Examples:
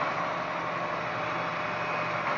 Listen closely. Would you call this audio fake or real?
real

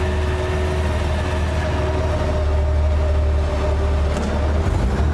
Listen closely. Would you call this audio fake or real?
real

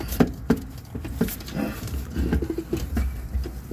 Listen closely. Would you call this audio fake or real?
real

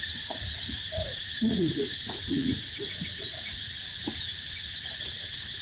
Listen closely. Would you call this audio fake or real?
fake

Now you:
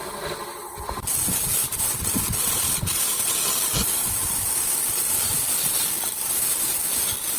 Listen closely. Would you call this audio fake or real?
real